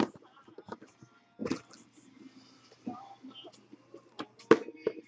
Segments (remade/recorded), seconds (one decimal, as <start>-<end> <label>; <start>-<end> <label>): 0.0-5.1 recorded